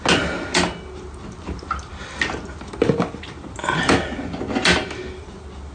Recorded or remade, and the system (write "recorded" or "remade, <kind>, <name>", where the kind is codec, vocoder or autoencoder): recorded